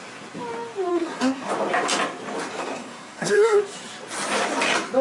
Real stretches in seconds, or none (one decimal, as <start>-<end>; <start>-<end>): 0.0-0.9; 1.5-2.6; 3.6-5.0